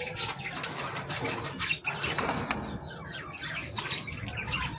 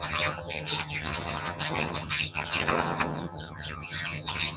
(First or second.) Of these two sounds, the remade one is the second